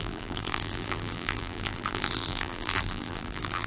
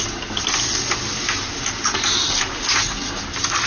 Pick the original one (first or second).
second